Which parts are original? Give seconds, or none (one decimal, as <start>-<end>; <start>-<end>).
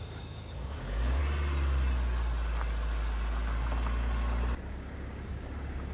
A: 1.2-4.7